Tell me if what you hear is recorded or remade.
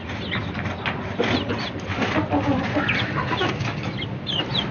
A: recorded